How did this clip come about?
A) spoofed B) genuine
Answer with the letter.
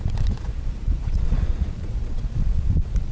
A